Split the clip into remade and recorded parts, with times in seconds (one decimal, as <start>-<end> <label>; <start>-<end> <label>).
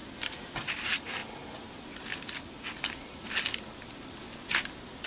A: 0.0-5.1 recorded